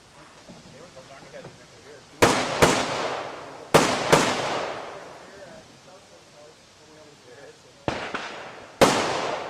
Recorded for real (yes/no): yes